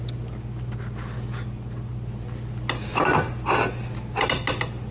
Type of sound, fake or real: real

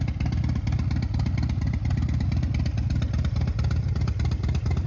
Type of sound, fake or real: real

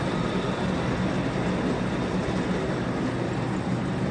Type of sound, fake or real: real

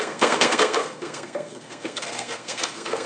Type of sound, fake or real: fake